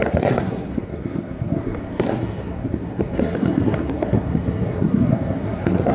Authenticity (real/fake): fake